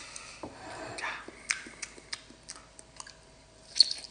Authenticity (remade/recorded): recorded